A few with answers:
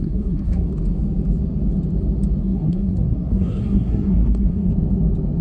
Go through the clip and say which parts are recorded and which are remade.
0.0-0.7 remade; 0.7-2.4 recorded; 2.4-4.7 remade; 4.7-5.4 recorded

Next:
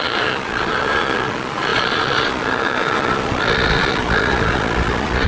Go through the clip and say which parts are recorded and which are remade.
0.0-5.3 remade

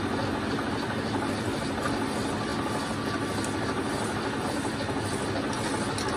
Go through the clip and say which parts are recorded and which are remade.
0.0-6.2 recorded

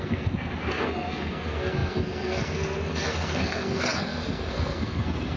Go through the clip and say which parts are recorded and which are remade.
0.0-5.4 remade

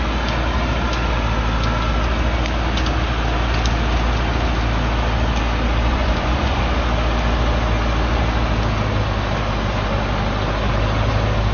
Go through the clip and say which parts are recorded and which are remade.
0.0-5.9 recorded; 5.9-6.6 remade; 6.6-11.5 recorded

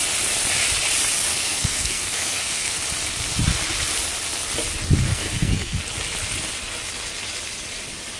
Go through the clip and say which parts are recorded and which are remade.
0.0-1.3 recorded; 1.3-2.8 remade; 2.8-5.1 recorded; 5.1-5.8 remade; 5.8-8.2 recorded

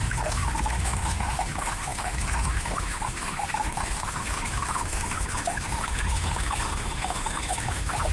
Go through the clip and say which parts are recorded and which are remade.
0.0-8.1 remade

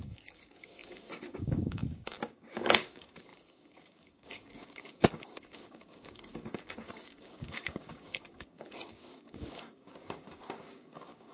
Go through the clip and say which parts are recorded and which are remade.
0.0-11.3 remade